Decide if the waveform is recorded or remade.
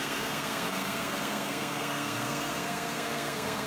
remade